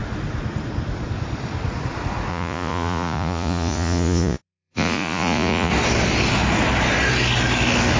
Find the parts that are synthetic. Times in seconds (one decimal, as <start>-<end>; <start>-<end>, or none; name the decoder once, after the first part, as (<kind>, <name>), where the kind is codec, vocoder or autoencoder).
2.3-5.7 (vocoder, Vocos)